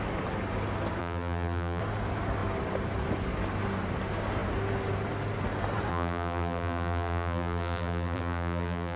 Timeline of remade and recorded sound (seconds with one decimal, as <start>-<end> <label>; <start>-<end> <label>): 0.0-1.0 recorded; 1.0-1.8 remade; 1.8-5.9 recorded; 5.9-9.0 remade